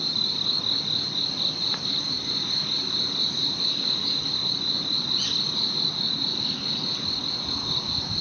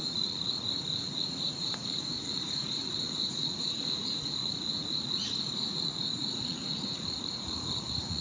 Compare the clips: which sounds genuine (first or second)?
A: first